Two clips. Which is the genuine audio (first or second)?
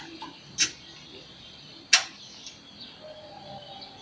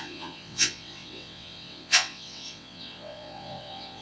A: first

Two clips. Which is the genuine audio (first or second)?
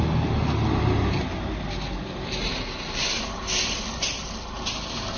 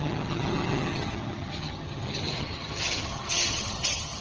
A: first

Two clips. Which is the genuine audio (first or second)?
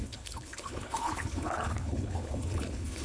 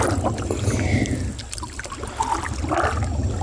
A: second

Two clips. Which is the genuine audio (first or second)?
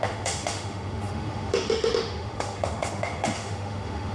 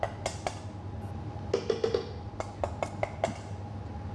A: second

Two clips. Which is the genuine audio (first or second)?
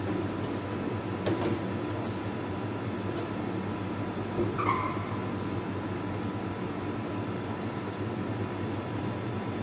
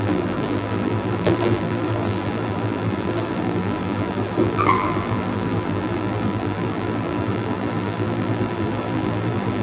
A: first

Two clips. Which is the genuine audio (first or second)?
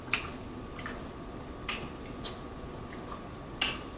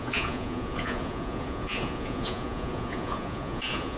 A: first